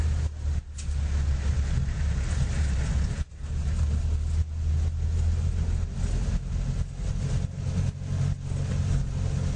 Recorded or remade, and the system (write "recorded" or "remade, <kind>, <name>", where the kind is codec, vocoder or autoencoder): recorded